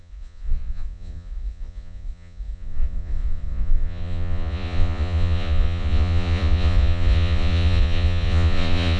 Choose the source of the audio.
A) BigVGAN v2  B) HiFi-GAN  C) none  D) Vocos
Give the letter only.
D